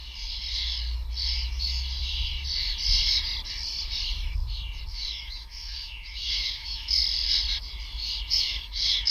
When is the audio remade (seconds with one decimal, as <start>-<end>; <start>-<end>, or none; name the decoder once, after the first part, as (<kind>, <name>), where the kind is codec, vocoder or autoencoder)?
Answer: 4.9-7.0 (autoencoder, DAC-VAE); 8.3-9.1

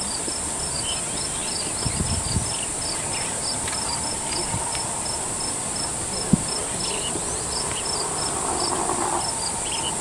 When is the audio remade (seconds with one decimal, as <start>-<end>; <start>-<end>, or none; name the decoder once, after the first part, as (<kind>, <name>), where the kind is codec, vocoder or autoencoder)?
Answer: none

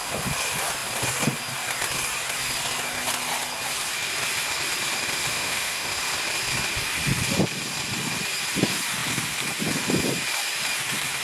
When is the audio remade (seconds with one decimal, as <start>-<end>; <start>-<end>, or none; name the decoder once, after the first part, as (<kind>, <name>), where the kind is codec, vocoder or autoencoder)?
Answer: 5.3-5.9 (autoencoder, DAC-VAE)

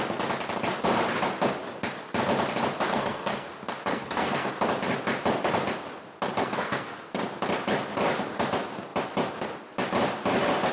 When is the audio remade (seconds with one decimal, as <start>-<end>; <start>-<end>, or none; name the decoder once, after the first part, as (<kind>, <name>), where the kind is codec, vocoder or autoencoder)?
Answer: 2.9-3.5 (codec, SNAC); 3.9-4.5; 6.4-7.2

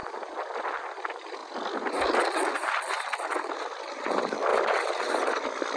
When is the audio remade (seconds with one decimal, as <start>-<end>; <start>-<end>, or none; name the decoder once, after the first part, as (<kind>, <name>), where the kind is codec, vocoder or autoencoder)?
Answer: 0.6-1.4 (vocoder, BigVGAN v2); 3.8-5.8

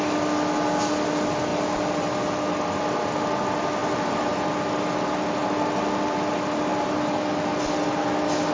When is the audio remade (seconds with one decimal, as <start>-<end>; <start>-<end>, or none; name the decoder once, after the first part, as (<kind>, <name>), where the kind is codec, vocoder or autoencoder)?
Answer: none